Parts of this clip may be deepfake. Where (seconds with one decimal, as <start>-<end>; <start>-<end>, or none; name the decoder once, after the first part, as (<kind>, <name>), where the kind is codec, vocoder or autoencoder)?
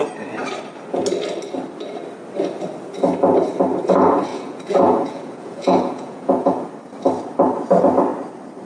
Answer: 4.3-6.6 (vocoder, Vocos)